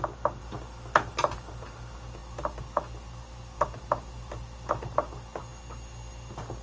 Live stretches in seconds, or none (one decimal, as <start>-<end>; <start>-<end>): 0.0-6.6